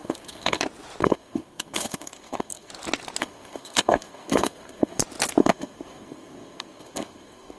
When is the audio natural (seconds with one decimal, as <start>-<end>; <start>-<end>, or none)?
0.6-1.0; 2.7-3.2; 5.0-5.4

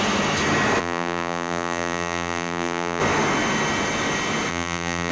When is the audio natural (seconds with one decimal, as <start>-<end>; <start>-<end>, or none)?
0.0-0.8; 3.0-4.5

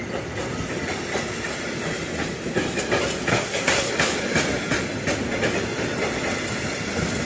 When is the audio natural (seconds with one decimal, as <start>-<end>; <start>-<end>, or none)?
0.0-3.3; 3.9-7.2

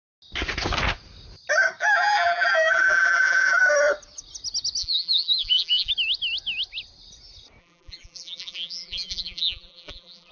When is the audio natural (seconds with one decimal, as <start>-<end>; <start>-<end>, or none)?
0.0-1.8; 3.6-4.8; 5.9-7.6

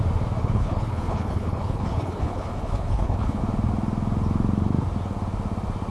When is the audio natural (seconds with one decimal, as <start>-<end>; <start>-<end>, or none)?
0.0-0.4; 3.4-5.9

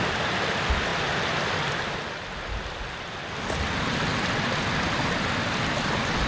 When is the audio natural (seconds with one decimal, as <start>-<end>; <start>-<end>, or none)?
0.0-6.3

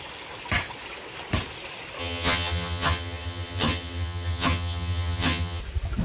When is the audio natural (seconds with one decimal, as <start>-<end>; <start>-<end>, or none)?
0.0-2.0; 5.6-6.0

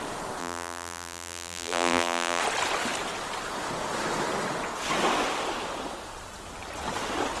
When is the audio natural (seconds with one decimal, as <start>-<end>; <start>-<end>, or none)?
0.0-0.4; 2.4-7.4